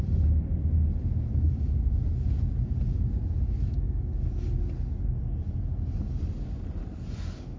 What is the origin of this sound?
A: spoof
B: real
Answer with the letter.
B